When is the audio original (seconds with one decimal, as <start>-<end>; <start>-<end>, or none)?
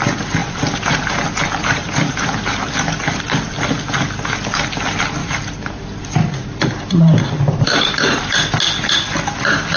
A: 0.0-0.4; 1.0-1.6; 3.6-5.2; 8.5-9.8